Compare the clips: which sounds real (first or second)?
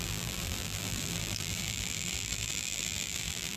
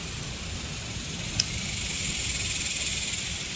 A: second